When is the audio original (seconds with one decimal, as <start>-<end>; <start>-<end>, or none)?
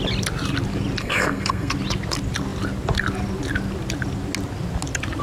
0.0-1.0; 1.7-5.2